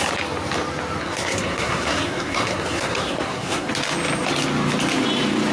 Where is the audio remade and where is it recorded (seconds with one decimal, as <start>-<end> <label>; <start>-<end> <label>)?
0.0-1.0 recorded; 1.0-3.7 remade; 3.7-5.5 recorded

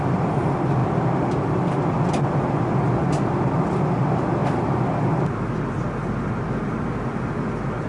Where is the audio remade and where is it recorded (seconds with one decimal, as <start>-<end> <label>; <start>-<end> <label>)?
0.0-7.9 recorded

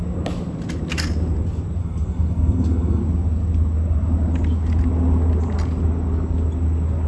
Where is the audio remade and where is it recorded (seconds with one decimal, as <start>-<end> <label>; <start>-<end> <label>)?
0.0-1.8 recorded; 1.8-3.0 remade; 3.0-7.1 recorded

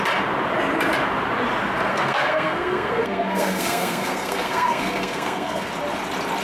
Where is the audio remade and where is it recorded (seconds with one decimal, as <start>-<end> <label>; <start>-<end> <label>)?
0.0-1.9 recorded; 1.9-5.7 remade; 5.7-6.4 recorded

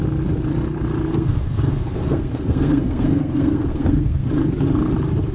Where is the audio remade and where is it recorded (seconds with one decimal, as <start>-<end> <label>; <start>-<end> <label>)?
0.0-1.1 recorded; 1.1-4.3 remade; 4.3-5.3 recorded

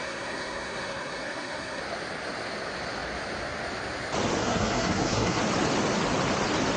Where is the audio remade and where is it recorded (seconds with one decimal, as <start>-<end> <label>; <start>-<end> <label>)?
0.0-1.8 remade; 1.8-4.4 recorded; 4.4-5.4 remade; 5.4-6.8 recorded

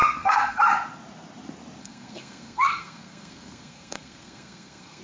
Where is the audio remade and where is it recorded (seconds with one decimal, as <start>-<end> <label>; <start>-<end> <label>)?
0.0-0.6 remade; 0.6-1.8 recorded; 1.8-5.0 remade